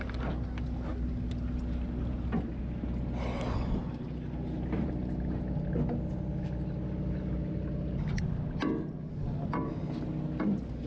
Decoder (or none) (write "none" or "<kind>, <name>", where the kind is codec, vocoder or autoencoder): none